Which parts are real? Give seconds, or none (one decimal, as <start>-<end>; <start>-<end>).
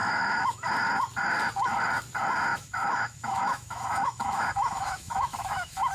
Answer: 0.7-2.5